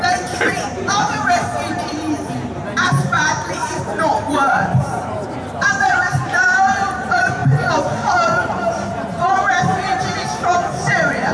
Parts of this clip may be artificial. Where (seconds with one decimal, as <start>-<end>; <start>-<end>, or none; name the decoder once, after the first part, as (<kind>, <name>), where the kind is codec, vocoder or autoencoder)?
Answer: 0.0-11.3 (vocoder, BigVGAN v2)